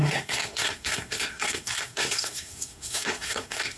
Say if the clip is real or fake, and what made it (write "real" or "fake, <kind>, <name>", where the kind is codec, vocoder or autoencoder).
fake, codec, SNAC